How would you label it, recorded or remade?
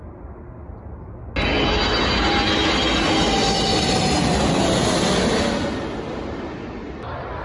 recorded